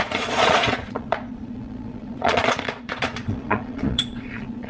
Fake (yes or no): yes